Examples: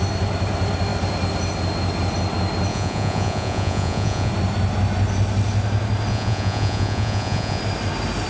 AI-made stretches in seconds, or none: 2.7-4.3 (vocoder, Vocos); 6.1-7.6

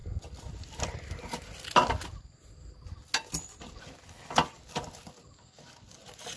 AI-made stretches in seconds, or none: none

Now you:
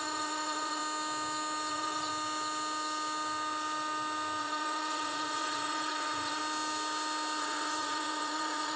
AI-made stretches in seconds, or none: 0.0-0.8 (vocoder, Vocos); 1.7-2.1; 4.4-6.4; 7.4-8.8